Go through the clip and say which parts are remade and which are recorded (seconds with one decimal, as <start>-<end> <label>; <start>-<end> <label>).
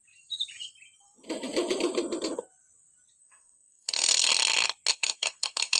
0.0-3.2 recorded; 3.2-4.3 remade; 4.3-4.9 recorded; 4.9-5.8 remade